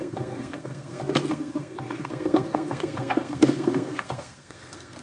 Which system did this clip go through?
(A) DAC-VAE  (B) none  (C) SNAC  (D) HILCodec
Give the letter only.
C